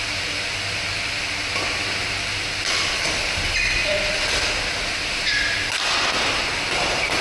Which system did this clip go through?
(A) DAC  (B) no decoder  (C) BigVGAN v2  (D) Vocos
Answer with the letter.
B